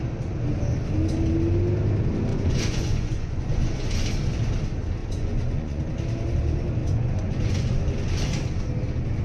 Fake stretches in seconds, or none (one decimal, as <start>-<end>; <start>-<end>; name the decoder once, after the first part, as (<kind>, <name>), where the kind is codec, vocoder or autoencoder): 2.3-4.0 (vocoder, Vocos); 5.0-5.8; 6.8-7.8